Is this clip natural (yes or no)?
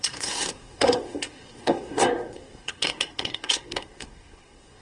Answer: no